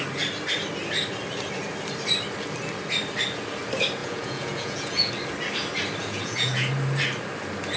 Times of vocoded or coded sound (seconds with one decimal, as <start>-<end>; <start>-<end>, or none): 4.0-5.1; 6.0-6.7